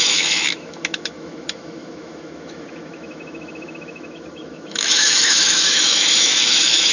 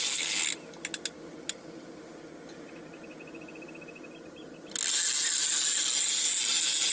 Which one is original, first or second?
second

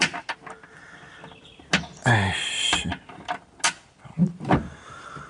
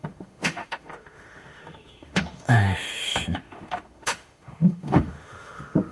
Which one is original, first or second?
first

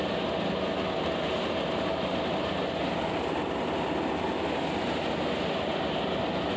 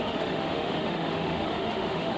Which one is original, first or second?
first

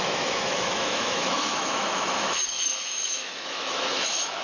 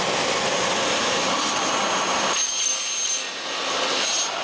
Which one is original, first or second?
second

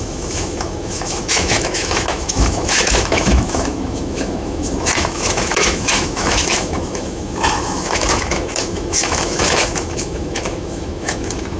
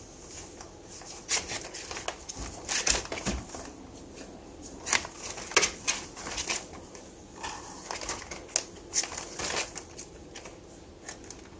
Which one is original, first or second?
second